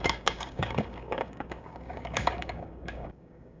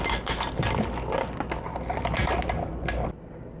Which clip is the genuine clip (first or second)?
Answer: second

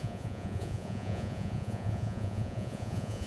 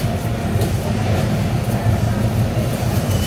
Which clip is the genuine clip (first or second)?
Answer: second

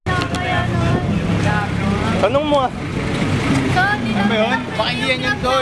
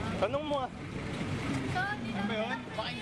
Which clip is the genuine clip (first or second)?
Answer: first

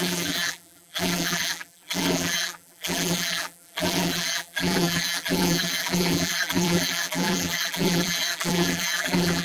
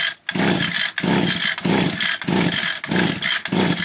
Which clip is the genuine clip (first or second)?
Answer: second